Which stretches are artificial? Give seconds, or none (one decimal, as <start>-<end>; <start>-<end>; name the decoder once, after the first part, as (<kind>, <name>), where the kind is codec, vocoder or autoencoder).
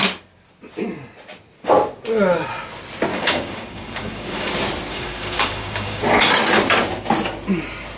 3.1-4.5 (codec, DAC); 4.9-6.0